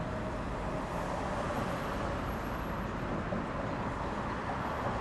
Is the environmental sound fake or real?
real